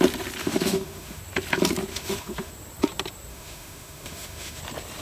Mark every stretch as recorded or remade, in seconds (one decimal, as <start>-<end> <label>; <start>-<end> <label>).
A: 0.0-0.4 recorded; 0.4-1.2 remade; 1.2-1.9 recorded; 1.9-2.5 remade; 2.5-3.3 recorded; 3.3-4.6 remade; 4.6-5.0 recorded